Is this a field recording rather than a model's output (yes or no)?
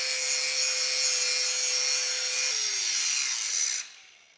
yes